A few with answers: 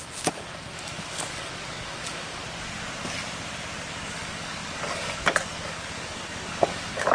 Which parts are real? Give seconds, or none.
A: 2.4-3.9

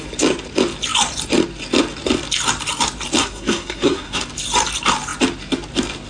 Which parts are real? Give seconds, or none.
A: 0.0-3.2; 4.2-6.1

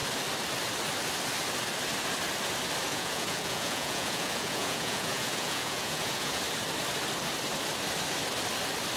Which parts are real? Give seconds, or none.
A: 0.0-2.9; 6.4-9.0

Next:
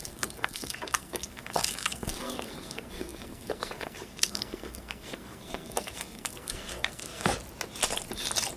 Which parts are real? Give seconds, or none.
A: 7.3-8.6

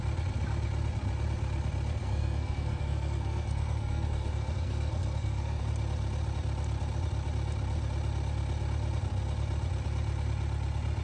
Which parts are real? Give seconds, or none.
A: 0.0-2.0; 5.6-11.0

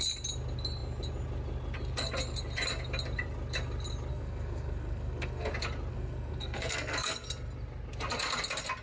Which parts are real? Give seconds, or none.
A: 0.0-4.1; 5.5-5.9; 7.1-8.8

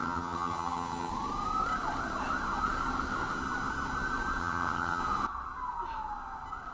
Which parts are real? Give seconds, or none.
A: 1.1-4.4; 5.0-6.7

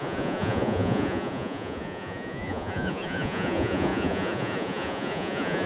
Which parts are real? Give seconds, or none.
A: none